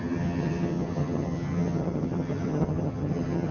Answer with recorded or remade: remade